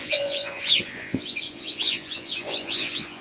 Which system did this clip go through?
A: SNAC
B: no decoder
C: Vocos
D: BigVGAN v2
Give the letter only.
C